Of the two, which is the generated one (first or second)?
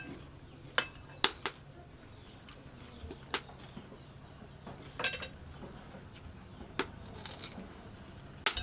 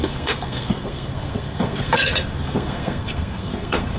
second